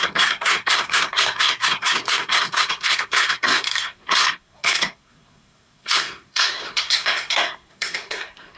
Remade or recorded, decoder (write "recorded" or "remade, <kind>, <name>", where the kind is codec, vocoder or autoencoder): remade, codec, SNAC